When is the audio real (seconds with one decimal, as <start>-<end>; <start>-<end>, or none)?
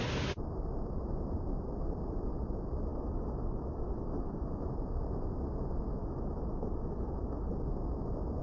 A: 0.0-2.9; 4.7-6.0; 7.5-8.4